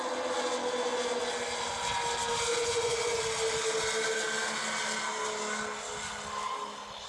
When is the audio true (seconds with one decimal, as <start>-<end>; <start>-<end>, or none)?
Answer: 0.0-2.5; 3.2-7.1